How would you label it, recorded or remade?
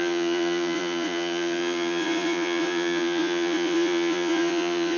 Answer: remade